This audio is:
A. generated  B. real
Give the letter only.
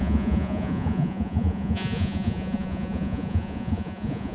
A